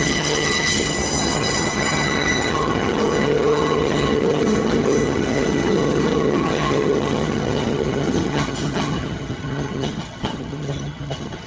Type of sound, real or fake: fake